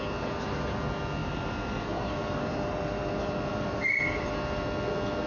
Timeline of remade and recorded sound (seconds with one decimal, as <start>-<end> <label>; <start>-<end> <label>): 0.0-1.2 recorded; 1.2-4.3 remade; 4.3-5.3 recorded